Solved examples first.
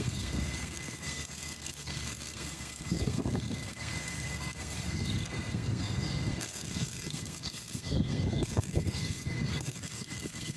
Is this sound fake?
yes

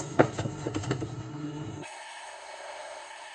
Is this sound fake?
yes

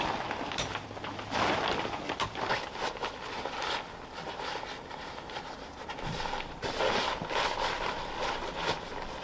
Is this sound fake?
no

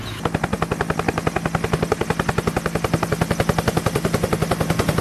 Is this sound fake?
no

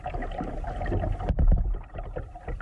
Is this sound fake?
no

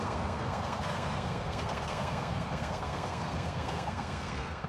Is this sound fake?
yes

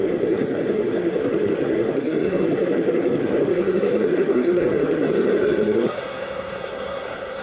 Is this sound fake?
yes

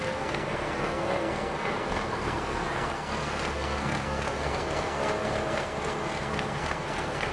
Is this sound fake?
yes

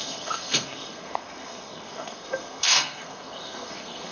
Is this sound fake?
yes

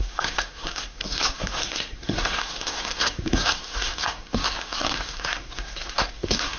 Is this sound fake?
yes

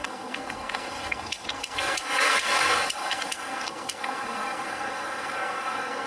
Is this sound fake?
yes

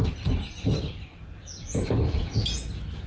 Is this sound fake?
no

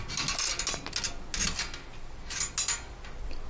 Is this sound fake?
no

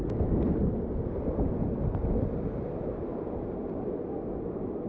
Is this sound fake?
no